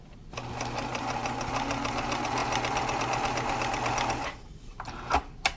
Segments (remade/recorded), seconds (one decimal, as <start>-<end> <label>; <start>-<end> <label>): 0.0-5.6 recorded